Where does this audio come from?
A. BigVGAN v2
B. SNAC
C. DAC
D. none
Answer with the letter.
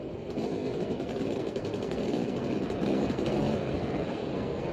B